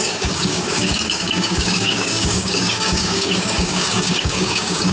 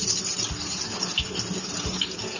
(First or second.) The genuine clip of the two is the second